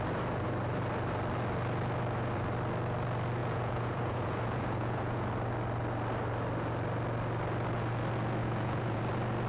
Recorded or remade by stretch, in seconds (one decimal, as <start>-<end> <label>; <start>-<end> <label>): 0.0-3.4 recorded; 3.4-5.3 remade; 5.3-8.4 recorded; 8.4-9.0 remade; 9.0-9.5 recorded

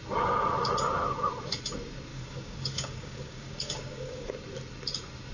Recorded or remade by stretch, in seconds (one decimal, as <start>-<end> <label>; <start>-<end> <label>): 0.0-2.1 recorded; 2.1-4.3 remade; 4.3-5.3 recorded